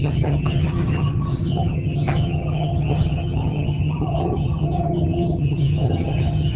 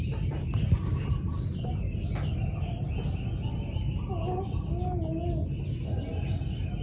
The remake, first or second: first